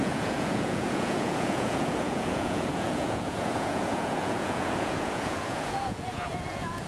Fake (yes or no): yes